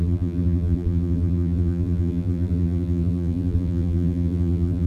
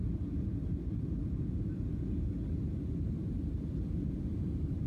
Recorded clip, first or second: second